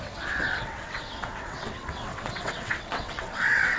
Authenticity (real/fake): fake